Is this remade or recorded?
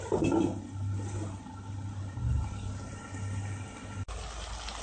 recorded